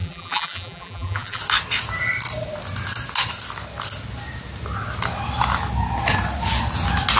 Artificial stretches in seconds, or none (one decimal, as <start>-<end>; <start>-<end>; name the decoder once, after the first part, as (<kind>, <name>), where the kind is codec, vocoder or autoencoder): 0.0-1.4 (vocoder, BigVGAN v2)